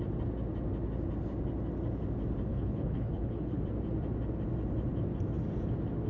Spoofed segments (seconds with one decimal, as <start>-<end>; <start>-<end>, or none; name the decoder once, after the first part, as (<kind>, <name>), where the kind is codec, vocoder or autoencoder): 2.5-3.6 (codec, HILCodec)

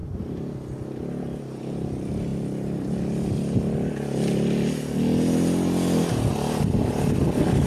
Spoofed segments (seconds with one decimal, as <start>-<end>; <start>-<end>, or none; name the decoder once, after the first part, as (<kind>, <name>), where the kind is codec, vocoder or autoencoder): none

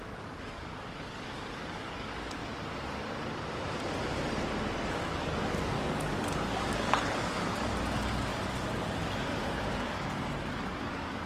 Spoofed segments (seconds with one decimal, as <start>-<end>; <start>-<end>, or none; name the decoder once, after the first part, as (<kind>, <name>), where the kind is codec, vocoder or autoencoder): 0.0-2.4 (codec, DAC); 4.9-11.3

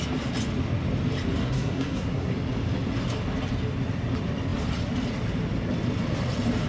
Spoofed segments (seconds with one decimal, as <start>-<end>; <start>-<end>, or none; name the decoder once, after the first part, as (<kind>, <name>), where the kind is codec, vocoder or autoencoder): 1.4-2.3 (codec, SNAC)

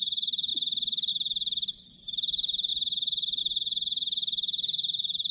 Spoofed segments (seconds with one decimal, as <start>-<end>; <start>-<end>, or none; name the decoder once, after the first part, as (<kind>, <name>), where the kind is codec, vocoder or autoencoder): 0.5-1.1 (autoencoder, DAC-VAE); 2.7-3.4

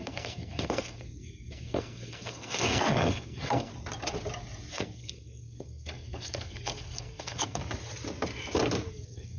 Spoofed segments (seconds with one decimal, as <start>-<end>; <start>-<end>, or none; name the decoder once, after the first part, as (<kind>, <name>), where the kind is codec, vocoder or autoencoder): 0.0-3.7 (codec, SNAC); 4.7-7.6; 8.9-9.4

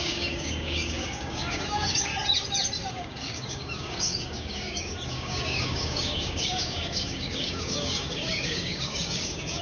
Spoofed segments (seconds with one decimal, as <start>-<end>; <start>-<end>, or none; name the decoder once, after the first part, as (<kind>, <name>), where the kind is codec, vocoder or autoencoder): 0.0-2.1 (codec, DAC); 2.9-9.6